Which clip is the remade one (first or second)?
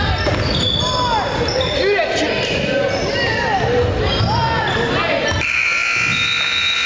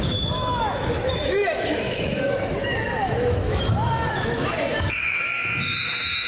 second